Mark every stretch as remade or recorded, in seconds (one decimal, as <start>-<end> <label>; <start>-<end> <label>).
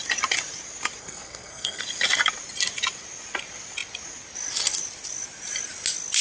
0.0-1.0 recorded; 1.0-1.8 remade; 1.8-6.2 recorded